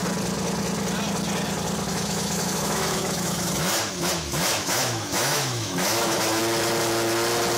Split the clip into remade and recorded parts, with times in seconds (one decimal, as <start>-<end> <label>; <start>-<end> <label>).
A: 0.0-1.9 recorded; 1.9-6.4 remade; 6.4-7.6 recorded